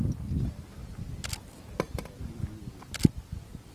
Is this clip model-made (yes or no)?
no